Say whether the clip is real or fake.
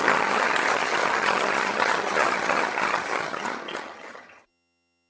fake